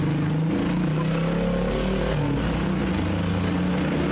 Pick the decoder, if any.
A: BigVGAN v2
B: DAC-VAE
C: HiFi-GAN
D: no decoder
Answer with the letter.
D